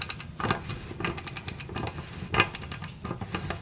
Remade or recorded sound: recorded